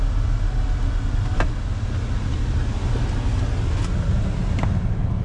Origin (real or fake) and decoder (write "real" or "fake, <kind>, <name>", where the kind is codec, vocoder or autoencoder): real